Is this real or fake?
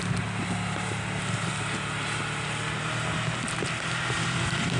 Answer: real